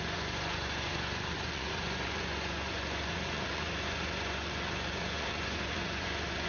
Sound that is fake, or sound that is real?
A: fake